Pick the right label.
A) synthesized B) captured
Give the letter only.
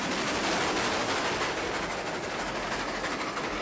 B